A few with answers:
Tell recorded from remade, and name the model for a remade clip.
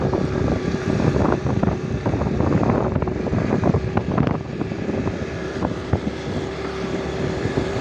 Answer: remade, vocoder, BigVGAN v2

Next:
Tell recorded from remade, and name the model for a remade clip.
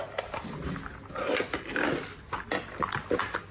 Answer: recorded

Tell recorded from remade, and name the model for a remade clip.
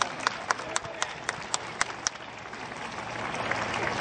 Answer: recorded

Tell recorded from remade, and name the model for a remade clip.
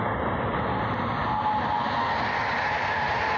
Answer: recorded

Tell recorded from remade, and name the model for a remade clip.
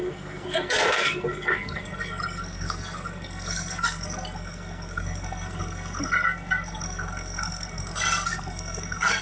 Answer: remade, codec, SNAC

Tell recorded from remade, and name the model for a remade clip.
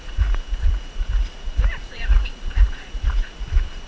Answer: remade, vocoder, Vocos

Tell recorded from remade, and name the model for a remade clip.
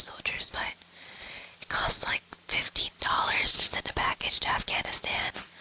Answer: recorded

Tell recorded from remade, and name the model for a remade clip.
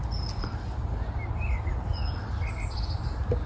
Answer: recorded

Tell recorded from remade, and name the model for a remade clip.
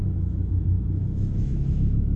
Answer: remade, autoencoder, DAC-VAE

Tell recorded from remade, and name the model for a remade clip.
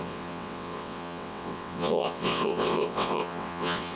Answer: remade, vocoder, WaveNeXt